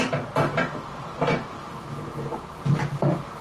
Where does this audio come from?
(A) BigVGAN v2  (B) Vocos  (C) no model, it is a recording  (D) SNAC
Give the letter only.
C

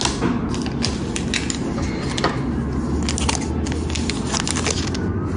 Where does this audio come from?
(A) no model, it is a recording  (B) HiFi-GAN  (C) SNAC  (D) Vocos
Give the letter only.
A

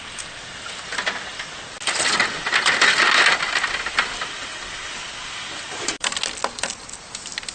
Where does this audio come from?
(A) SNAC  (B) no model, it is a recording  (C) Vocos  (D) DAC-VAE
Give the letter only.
B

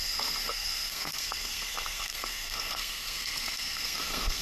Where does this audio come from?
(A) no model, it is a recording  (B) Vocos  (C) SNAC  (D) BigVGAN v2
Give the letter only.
C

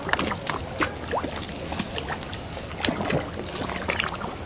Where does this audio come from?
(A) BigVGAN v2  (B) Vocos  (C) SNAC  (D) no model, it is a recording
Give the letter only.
D